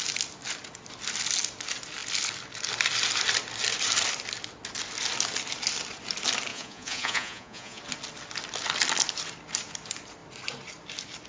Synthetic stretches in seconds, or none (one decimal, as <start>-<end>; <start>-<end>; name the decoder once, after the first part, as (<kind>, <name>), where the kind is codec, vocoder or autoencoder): 6.5-7.8 (vocoder, Vocos)